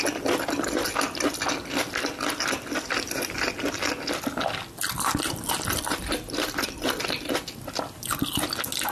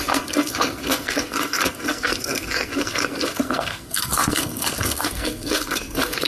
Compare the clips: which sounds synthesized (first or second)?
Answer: second